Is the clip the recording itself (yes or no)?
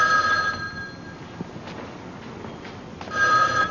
yes